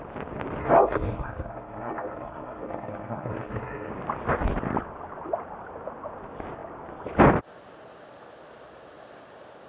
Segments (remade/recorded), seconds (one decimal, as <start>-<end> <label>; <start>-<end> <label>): 0.0-0.6 recorded; 0.6-3.9 remade; 3.9-9.7 recorded